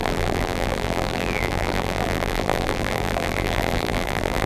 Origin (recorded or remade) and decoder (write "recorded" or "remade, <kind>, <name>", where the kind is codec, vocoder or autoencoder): remade, vocoder, BigVGAN v2